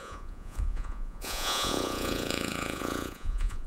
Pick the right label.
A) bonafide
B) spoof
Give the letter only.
B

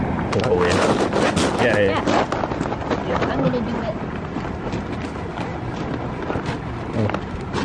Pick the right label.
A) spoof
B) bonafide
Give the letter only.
B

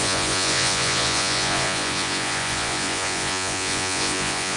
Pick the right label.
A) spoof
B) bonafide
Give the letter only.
A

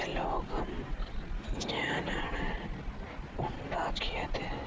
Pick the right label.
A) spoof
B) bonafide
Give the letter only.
B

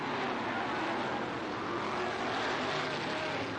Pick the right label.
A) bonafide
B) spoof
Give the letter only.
A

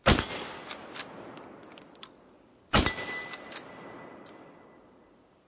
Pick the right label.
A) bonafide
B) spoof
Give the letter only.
A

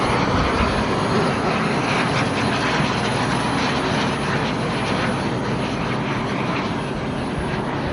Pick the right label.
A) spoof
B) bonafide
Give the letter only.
B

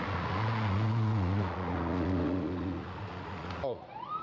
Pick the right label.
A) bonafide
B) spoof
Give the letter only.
B